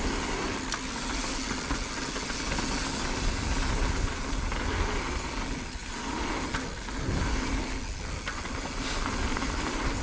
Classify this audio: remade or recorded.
recorded